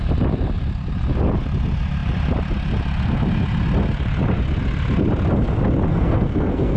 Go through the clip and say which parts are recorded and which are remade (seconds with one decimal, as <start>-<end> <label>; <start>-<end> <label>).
0.0-5.9 recorded; 5.9-6.8 remade